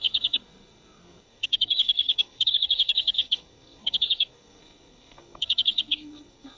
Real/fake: fake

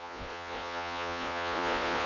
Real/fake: fake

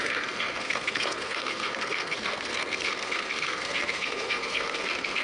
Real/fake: fake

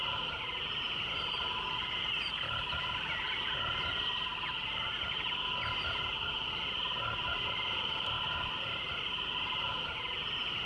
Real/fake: real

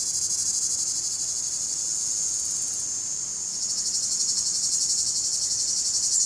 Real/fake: real